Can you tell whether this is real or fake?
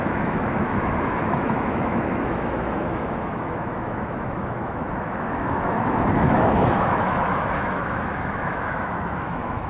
fake